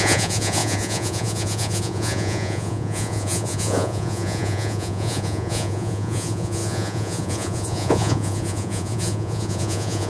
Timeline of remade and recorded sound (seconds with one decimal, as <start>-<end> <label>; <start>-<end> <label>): 0.0-10.1 remade